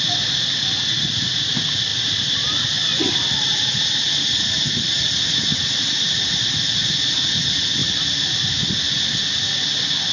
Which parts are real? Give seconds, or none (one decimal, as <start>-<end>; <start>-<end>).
0.0-10.1